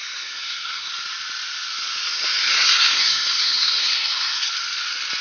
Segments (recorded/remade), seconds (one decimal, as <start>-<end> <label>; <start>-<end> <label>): 0.0-0.9 remade; 0.9-2.5 recorded; 2.5-4.5 remade; 4.5-5.2 recorded